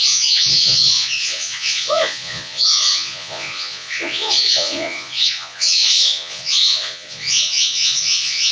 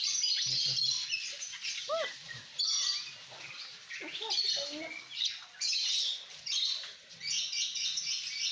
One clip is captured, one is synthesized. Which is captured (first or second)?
second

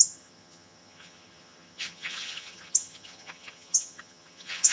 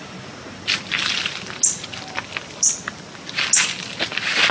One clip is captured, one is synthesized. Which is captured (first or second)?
second